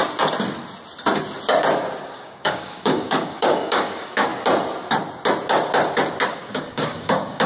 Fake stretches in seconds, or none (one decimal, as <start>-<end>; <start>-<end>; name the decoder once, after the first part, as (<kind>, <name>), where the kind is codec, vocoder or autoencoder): 2.1-4.3 (codec, DAC); 6.3-7.5